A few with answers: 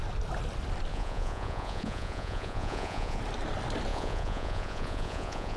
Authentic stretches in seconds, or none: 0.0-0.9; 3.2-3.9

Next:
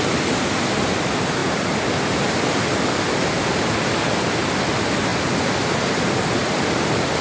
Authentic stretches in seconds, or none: 0.0-7.2